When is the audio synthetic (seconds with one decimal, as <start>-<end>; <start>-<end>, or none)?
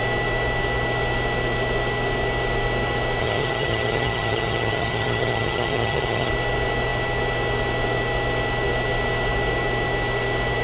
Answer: 3.2-6.3